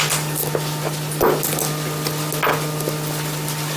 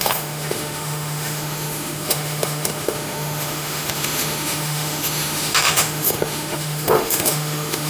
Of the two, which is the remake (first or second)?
second